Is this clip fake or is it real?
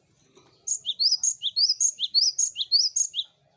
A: real